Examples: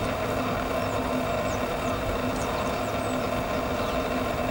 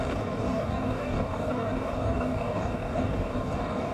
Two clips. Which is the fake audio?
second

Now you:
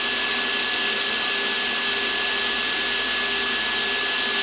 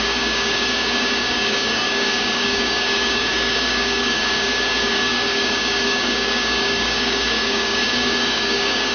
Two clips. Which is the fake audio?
second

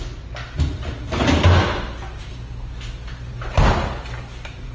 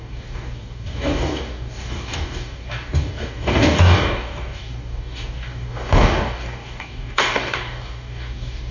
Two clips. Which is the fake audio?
second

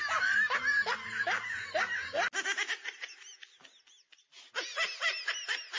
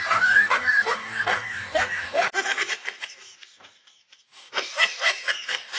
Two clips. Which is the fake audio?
second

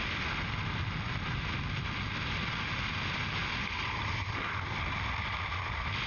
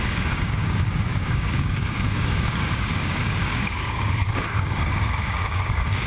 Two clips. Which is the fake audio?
second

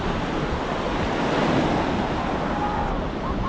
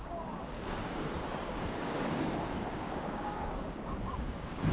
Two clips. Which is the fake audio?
second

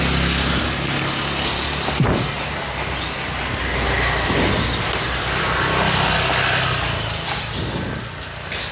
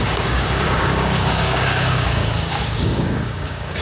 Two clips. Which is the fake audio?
second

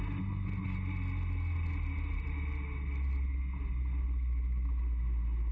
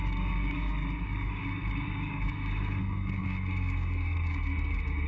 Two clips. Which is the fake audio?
second